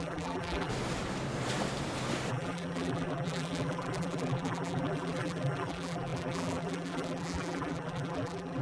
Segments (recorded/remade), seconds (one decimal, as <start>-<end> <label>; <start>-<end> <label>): 0.0-0.7 remade; 0.7-2.3 recorded; 2.3-8.6 remade